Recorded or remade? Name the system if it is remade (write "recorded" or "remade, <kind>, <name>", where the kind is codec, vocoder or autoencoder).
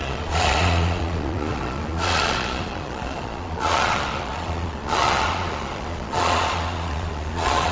remade, vocoder, Vocos